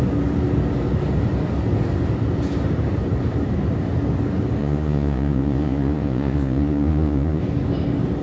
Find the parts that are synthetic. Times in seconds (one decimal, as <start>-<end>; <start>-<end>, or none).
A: 4.6-7.4